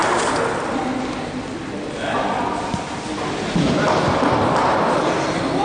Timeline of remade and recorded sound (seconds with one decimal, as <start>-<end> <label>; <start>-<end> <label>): 0.0-5.6 recorded